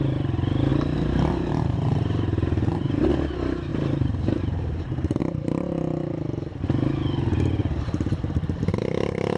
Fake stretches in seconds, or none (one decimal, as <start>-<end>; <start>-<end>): 0.7-3.1; 3.7-5.2